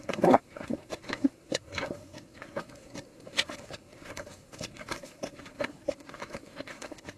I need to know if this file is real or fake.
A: fake